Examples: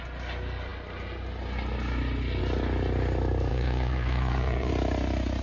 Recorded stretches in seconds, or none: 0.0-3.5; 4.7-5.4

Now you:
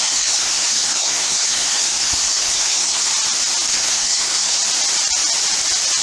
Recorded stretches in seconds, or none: 3.1-3.7; 4.6-6.0

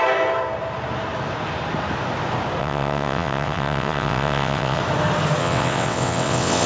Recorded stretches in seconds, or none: 0.0-2.6; 4.8-5.4

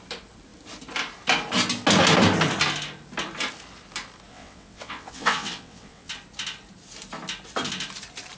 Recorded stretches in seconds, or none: 0.0-4.3; 6.1-8.4

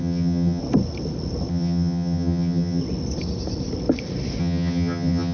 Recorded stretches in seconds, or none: 0.6-1.5; 2.8-4.4